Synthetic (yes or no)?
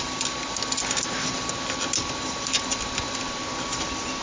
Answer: no